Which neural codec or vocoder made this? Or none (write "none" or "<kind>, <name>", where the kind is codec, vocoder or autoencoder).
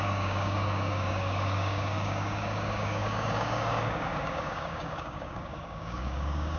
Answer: codec, DAC